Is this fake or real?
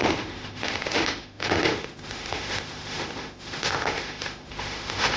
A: fake